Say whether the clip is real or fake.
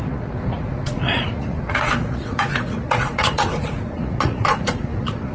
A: fake